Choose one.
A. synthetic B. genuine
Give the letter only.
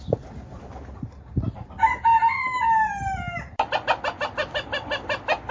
B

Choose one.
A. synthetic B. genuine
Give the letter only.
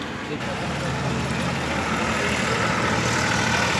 B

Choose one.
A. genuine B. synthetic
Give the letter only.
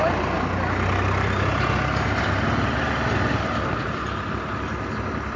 A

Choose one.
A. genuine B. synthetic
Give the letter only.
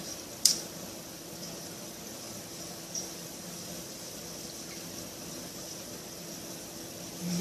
B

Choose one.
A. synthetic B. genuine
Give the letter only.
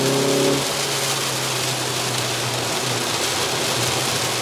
B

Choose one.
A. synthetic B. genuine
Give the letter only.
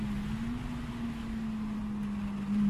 B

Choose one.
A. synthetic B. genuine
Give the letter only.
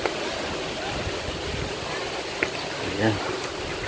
B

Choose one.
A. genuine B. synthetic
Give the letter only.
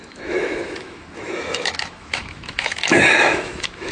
B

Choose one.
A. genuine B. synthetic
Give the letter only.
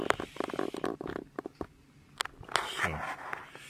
A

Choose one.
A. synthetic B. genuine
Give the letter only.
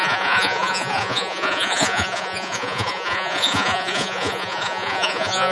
A